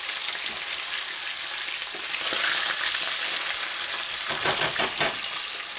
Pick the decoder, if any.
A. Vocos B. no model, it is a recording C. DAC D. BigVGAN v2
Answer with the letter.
B